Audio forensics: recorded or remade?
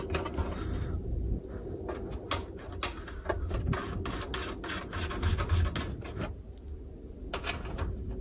recorded